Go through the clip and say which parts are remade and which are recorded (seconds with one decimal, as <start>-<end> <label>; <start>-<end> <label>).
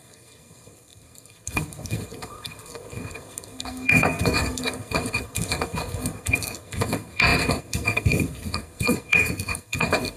0.0-10.2 remade